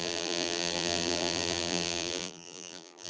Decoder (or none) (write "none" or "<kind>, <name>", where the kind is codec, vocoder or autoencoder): vocoder, BigVGAN v2